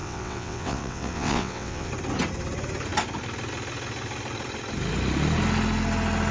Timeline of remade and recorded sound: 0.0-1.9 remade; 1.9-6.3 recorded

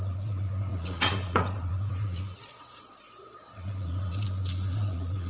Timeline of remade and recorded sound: 0.0-5.3 remade

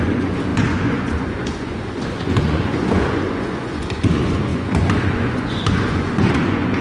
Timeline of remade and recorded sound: 0.0-6.8 remade

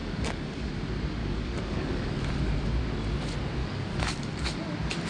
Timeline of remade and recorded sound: 0.0-0.7 remade; 0.7-1.2 recorded; 1.2-2.2 remade; 2.2-3.6 recorded; 3.6-4.6 remade; 4.6-5.1 recorded

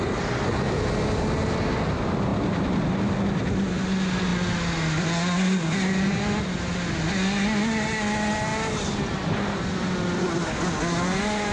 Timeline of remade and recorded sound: 0.0-11.5 recorded